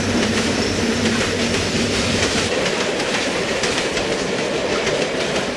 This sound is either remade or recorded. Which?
remade